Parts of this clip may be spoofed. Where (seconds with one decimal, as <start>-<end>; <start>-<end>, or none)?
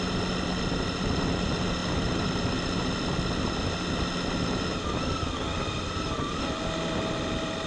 none